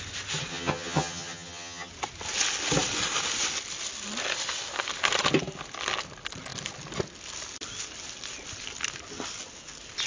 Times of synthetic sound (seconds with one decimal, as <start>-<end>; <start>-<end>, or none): 0.5-1.9